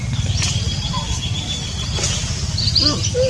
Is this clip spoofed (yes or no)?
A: no